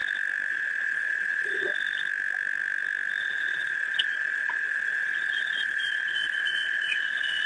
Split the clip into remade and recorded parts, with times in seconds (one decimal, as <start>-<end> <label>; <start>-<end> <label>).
0.0-0.5 recorded; 0.5-1.7 remade; 1.7-3.2 recorded; 3.2-7.5 remade